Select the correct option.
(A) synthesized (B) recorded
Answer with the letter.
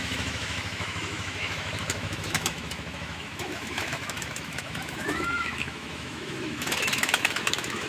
A